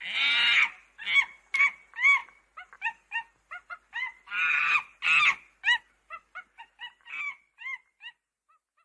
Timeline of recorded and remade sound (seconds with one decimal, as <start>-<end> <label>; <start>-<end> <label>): 0.0-8.8 recorded

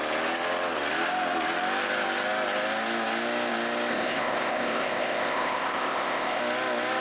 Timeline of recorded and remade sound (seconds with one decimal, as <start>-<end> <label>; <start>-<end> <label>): 0.0-3.9 recorded; 3.9-6.4 remade; 6.4-7.0 recorded

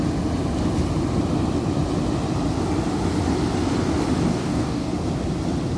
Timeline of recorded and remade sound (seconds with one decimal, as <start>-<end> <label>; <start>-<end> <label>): 0.0-4.3 recorded; 4.3-4.9 remade; 4.9-5.8 recorded

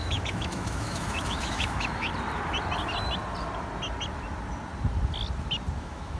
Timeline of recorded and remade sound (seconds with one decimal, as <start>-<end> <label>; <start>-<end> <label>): 0.0-2.1 remade; 2.1-5.8 recorded; 5.8-6.2 remade

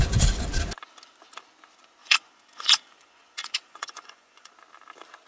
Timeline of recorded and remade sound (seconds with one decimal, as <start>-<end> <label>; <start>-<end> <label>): 0.0-2.0 recorded; 2.0-4.5 remade; 4.5-5.3 recorded